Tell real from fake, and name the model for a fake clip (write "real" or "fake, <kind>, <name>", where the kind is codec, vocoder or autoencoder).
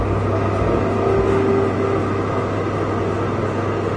real